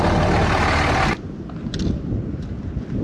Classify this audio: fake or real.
real